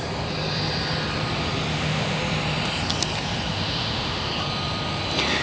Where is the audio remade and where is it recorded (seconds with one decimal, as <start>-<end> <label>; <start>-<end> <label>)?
0.0-1.7 recorded; 1.7-2.2 remade; 2.2-3.5 recorded; 3.5-4.3 remade; 4.3-5.4 recorded